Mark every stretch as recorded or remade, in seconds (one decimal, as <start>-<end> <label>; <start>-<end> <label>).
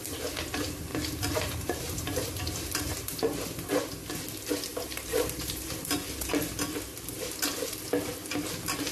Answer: 0.0-0.9 recorded; 0.9-3.7 remade; 3.7-4.7 recorded; 4.7-5.8 remade; 5.8-8.9 recorded